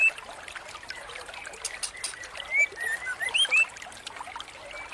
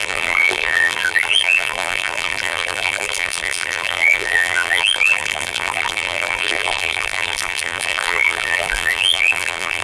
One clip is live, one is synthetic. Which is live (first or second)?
first